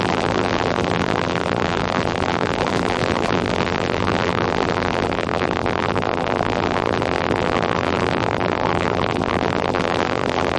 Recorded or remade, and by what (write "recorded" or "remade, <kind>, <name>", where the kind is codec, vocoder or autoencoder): remade, vocoder, BigVGAN v2